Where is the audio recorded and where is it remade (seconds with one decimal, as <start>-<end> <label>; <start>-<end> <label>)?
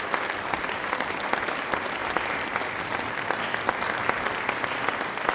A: 0.0-5.3 recorded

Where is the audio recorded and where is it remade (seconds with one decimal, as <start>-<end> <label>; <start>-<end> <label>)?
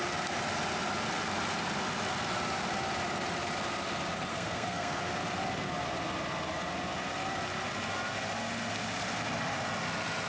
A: 0.0-4.3 recorded; 4.3-5.0 remade; 5.0-10.3 recorded